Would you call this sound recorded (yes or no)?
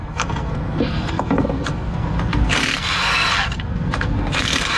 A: no